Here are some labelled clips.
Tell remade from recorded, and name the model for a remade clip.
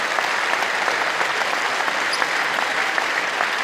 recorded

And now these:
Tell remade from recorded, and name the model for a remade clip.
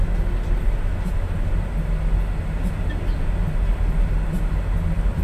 recorded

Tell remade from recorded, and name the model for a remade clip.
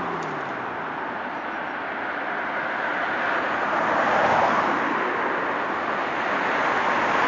recorded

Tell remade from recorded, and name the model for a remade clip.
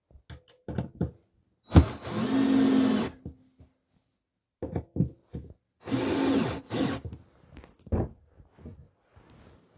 recorded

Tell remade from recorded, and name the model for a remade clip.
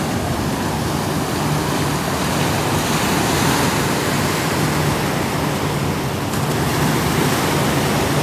recorded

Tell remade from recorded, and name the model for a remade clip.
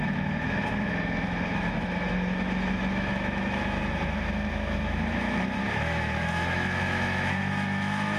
remade, autoencoder, DAC-VAE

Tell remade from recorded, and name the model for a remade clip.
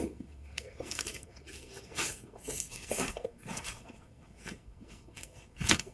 remade, codec, SNAC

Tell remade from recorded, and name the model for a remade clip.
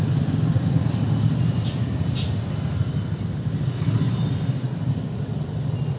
recorded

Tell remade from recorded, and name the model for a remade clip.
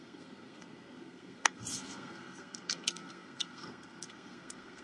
remade, codec, SNAC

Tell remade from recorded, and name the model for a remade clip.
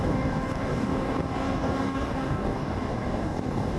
remade, codec, DAC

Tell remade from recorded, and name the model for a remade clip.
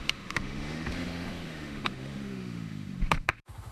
remade, autoencoder, DAC-VAE